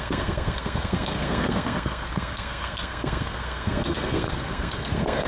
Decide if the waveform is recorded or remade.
remade